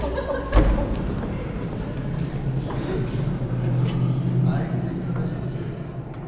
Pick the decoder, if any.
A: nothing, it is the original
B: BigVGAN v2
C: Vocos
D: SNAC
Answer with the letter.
A